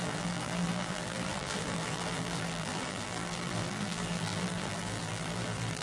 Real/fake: fake